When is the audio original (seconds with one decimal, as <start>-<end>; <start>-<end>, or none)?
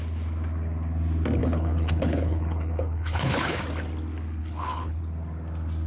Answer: 0.0-1.4; 3.6-4.4; 5.0-5.9